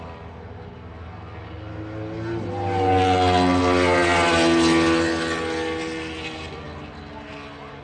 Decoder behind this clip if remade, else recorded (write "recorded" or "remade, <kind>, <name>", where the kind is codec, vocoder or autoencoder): recorded